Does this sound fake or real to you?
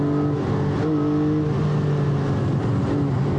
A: real